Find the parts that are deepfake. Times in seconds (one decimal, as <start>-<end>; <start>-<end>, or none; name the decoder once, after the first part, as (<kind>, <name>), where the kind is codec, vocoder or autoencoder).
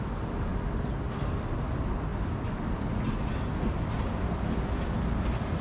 none